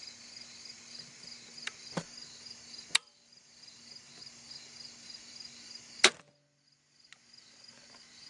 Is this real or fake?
real